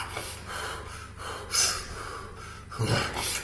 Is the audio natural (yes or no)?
yes